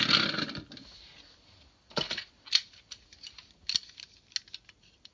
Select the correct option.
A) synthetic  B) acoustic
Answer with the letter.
B